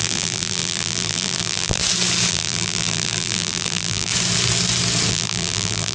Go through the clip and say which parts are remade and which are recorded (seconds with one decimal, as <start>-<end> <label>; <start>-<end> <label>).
0.0-1.8 remade; 1.8-2.3 recorded; 2.3-4.1 remade; 4.1-5.1 recorded; 5.1-5.9 remade